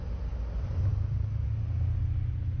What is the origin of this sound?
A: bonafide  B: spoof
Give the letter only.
A